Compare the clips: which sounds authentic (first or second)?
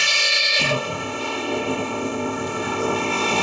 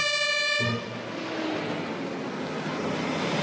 second